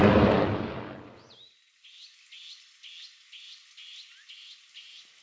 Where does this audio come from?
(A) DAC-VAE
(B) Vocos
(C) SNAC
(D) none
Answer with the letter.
D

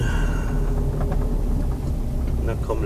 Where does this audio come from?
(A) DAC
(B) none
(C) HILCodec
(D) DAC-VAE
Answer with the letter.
B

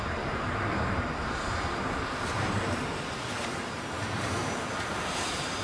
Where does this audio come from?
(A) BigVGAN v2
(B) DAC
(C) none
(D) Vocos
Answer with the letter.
A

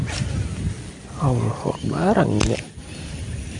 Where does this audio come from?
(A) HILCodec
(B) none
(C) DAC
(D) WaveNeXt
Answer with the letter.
B